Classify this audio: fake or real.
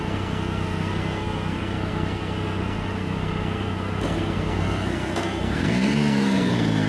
fake